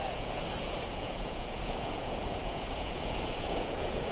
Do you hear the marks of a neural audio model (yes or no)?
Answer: yes